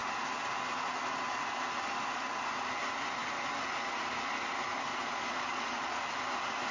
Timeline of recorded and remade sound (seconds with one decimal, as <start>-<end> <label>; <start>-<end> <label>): 0.0-4.9 recorded; 4.9-6.0 remade; 6.0-6.7 recorded